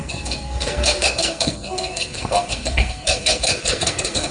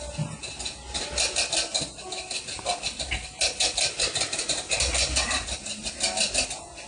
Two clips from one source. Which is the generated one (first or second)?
first